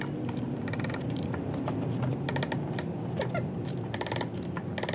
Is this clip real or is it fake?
fake